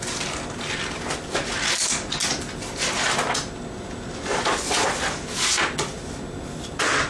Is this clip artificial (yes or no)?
no